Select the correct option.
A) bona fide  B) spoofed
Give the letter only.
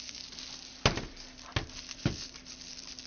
A